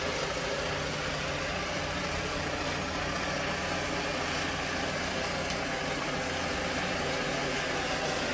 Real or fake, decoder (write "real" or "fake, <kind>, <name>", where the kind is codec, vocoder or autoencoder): real